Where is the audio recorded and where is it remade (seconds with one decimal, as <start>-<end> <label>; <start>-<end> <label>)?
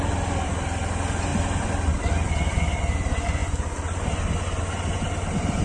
0.0-5.6 recorded